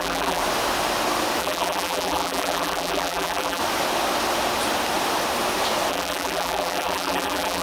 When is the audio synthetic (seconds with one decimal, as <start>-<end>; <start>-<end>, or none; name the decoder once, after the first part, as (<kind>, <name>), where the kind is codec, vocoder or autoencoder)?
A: 0.0-0.4 (vocoder, BigVGAN v2); 1.4-3.6; 5.9-7.6